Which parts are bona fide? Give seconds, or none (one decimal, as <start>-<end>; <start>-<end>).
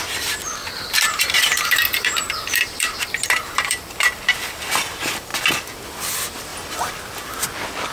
0.0-0.6; 4.2-7.9